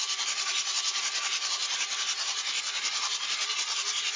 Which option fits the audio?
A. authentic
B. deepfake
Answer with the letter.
B